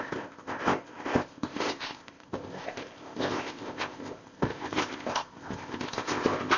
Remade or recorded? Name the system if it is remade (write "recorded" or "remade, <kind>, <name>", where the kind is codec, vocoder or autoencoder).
remade, codec, ZipCodec